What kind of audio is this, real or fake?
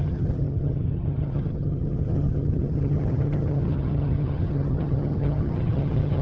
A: fake